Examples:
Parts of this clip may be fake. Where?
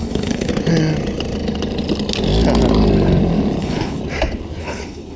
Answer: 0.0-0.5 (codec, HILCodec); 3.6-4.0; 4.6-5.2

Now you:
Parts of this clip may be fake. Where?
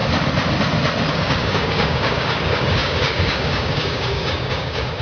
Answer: 1.1-5.0 (codec, DAC)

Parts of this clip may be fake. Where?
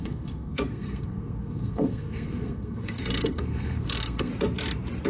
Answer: 0.0-4.3 (codec, SNAC)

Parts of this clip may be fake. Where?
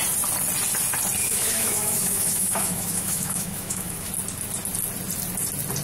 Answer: 1.2-4.1 (autoencoder, DAC-VAE)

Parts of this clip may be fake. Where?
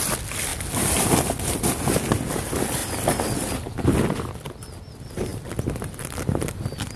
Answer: 0.5-1.1 (vocoder, BigVGAN v2); 5.3-7.0